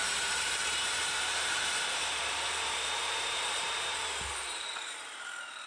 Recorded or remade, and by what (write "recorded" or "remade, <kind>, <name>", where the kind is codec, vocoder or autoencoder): remade, vocoder, BigVGAN v2